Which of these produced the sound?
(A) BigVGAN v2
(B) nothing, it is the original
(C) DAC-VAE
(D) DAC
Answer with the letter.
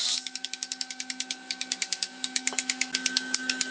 D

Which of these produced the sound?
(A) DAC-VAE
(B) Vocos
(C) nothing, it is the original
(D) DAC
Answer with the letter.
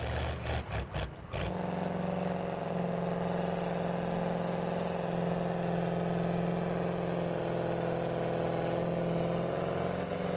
C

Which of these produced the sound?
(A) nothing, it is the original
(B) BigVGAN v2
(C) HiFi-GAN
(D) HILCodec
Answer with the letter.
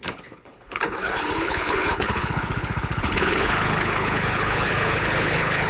D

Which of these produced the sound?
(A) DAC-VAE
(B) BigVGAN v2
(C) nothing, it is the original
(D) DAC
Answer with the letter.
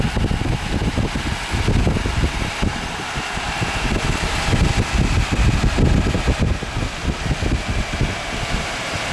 C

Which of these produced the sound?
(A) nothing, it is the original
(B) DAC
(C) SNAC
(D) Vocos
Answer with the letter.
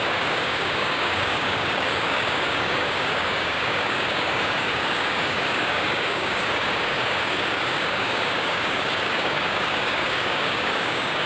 B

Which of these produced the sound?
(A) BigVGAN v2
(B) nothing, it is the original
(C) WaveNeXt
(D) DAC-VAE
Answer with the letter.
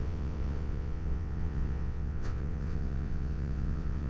C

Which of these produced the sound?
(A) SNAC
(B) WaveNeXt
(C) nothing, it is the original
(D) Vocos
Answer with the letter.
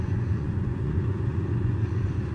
D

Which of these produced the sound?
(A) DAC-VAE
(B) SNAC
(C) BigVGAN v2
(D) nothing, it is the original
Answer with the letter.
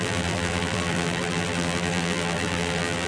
C